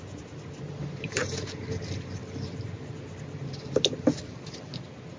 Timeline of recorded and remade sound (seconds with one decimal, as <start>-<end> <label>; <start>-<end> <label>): 0.0-5.2 recorded